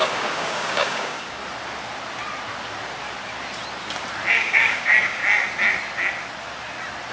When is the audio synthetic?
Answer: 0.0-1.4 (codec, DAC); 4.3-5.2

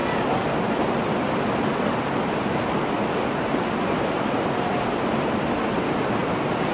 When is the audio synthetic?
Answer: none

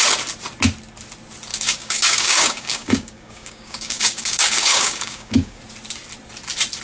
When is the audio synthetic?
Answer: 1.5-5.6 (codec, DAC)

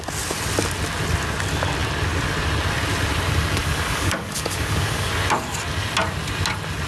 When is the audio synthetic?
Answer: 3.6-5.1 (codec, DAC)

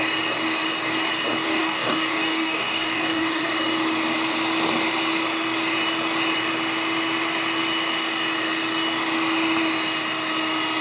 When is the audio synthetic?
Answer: 1.6-3.4 (codec, DAC)

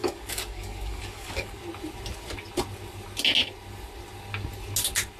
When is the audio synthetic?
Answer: 0.0-1.6 (codec, DAC)